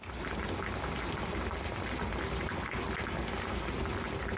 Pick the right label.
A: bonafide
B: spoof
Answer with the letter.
A